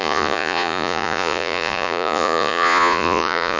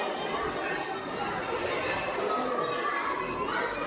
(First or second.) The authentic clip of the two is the second